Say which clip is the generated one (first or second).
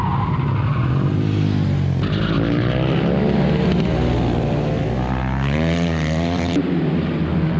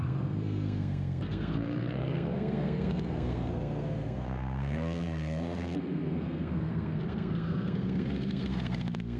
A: second